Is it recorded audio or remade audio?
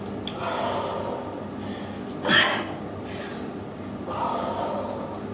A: recorded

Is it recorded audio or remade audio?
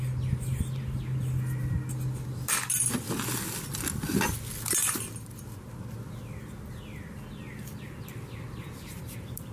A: recorded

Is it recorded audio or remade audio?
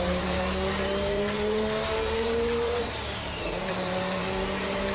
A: remade